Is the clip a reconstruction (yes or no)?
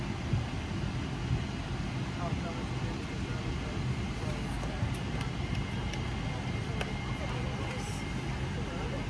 no